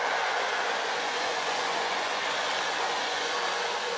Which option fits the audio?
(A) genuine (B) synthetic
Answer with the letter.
B